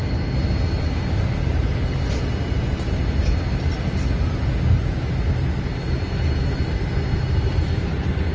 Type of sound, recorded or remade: recorded